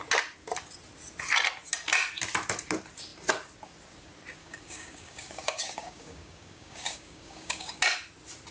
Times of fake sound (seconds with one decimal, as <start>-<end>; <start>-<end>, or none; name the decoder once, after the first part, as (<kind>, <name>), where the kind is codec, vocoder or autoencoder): 4.4-7.8 (codec, DAC)